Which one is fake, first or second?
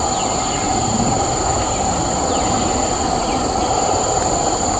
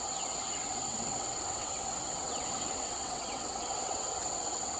second